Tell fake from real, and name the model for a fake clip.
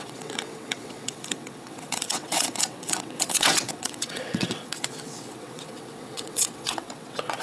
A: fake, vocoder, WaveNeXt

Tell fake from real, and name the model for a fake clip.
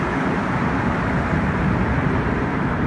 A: fake, vocoder, BigVGAN v2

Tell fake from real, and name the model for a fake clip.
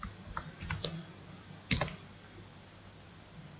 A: real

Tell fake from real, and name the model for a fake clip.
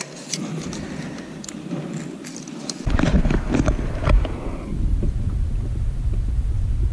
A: real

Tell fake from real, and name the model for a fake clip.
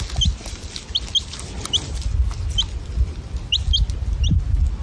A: real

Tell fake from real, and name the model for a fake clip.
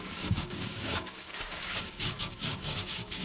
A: fake, codec, DAC